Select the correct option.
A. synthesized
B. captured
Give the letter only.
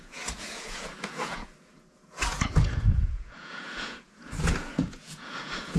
A